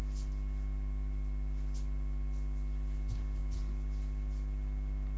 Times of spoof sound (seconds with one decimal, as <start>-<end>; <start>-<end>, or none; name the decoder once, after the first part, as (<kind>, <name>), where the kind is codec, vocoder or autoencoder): none